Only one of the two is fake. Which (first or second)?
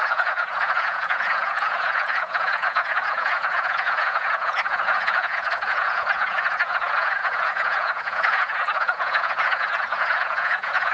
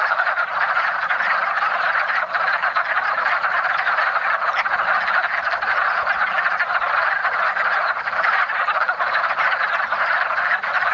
first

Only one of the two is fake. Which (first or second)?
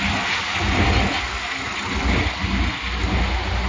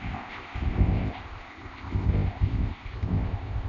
second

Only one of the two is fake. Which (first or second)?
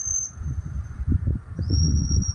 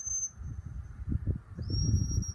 first